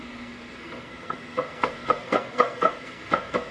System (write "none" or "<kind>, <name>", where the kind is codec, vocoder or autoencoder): codec, SNAC